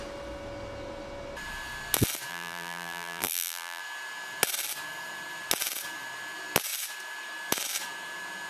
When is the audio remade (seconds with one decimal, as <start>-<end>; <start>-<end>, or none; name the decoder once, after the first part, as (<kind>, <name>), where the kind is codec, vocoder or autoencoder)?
2.3-3.8 (vocoder, BigVGAN v2)